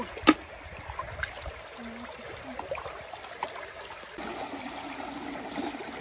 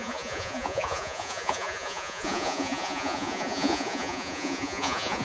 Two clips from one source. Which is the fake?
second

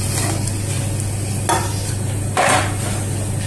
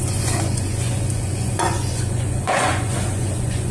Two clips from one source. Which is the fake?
second